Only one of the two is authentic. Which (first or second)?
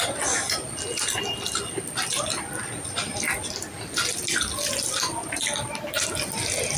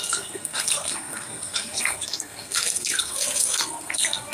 first